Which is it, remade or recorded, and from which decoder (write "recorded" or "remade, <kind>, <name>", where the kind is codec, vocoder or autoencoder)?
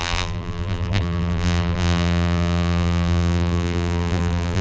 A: remade, vocoder, BigVGAN v2